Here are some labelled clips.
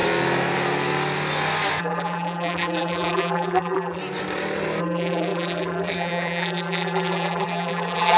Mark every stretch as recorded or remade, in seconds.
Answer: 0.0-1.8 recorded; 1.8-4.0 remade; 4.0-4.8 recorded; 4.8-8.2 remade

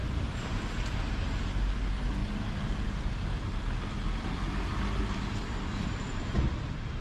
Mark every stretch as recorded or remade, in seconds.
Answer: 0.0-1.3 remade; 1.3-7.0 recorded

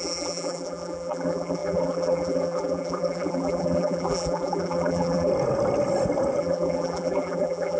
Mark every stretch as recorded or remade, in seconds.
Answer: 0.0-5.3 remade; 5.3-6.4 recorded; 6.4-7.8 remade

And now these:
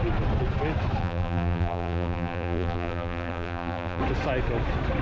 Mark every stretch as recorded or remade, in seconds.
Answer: 0.0-1.0 recorded; 1.0-4.0 remade; 4.0-5.0 recorded

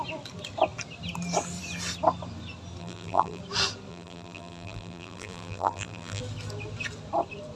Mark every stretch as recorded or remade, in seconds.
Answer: 0.0-2.8 recorded; 2.8-3.4 remade; 3.4-3.9 recorded; 3.9-6.2 remade; 6.2-7.6 recorded

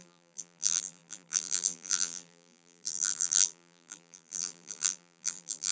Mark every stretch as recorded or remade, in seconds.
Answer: 0.0-5.7 remade

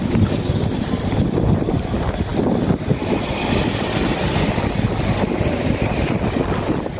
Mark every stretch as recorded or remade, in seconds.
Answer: 0.0-7.0 recorded

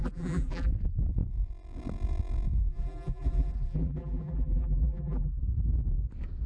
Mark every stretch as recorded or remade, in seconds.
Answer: 0.0-0.7 remade; 0.7-2.7 recorded; 2.7-5.4 remade; 5.4-6.5 recorded